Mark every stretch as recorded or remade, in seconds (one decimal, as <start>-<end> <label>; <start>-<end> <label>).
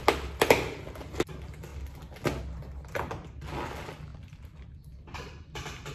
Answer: 0.0-4.1 recorded; 4.1-5.9 remade